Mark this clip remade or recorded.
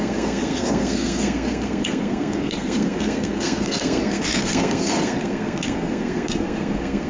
remade